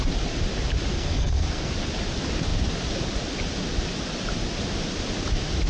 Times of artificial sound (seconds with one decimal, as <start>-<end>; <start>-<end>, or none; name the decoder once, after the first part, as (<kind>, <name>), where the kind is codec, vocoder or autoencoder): 0.9-1.7 (codec, SNAC)

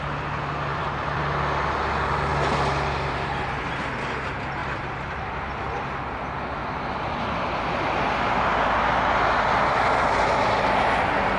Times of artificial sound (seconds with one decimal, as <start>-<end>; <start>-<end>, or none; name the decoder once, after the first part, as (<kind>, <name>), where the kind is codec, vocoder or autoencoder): 0.7-1.2 (vocoder, BigVGAN v2); 2.3-3.6; 4.6-5.2

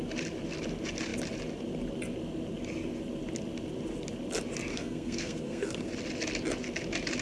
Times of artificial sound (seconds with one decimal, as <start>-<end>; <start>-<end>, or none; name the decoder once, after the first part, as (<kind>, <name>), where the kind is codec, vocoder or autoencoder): 4.7-5.9 (codec, SNAC)

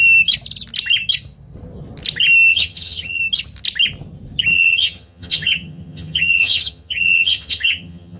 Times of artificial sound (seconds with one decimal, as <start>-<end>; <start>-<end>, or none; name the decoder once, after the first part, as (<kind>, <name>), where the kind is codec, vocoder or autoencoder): 2.5-3.2 (vocoder, HiFi-GAN); 4.5-8.2

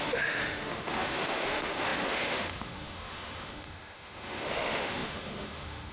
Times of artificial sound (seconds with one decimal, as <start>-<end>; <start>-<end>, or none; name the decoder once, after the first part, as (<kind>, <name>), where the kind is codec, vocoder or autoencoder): 0.0-5.9 (autoencoder, DAC-VAE)

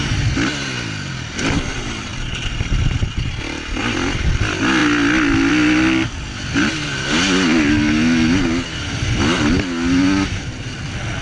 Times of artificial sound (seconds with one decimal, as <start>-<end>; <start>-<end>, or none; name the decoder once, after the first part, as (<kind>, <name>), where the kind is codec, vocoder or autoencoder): none

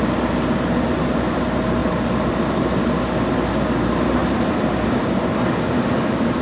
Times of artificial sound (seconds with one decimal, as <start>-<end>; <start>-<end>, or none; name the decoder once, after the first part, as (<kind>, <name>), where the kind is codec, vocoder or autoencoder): 1.8-2.8 (vocoder, BigVGAN v2)

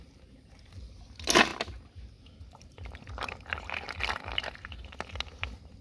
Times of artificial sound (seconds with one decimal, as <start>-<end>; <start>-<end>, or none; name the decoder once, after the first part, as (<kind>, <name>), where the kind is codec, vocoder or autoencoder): none